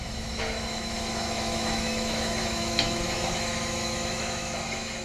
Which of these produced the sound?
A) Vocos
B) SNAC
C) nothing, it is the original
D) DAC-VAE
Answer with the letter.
D